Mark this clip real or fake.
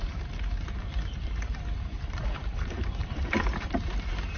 fake